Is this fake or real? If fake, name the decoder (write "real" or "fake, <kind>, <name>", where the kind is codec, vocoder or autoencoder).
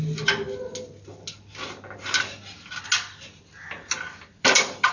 real